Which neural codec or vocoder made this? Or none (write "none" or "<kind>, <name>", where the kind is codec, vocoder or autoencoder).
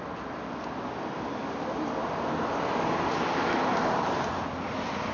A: none